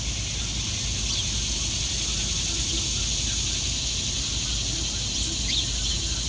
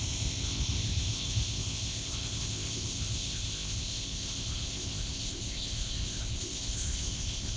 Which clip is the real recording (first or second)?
first